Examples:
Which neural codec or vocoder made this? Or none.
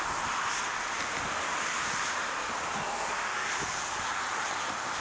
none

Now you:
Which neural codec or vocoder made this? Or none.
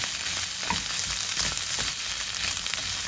none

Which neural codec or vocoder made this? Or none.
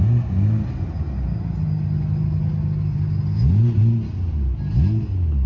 none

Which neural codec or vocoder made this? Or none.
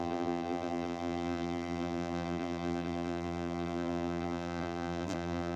vocoder, BigVGAN v2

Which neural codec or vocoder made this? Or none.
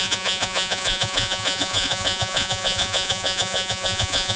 vocoder, Vocos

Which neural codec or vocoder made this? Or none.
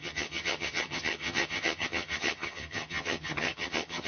vocoder, HiFi-GAN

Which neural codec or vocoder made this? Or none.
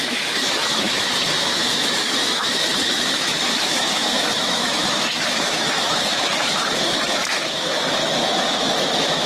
autoencoder, DAC-VAE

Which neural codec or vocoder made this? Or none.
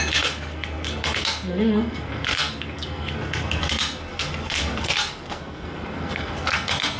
codec, SNAC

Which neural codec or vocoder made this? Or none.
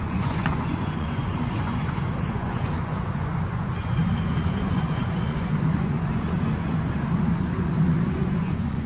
vocoder, Vocos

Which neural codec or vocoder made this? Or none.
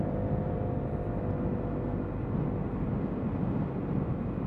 none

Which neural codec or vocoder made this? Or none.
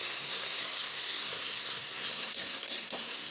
codec, SNAC